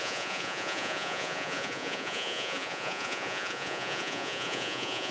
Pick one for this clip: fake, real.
fake